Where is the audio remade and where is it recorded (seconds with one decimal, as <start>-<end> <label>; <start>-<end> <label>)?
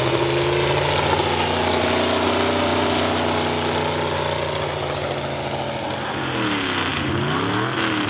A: 0.0-8.1 recorded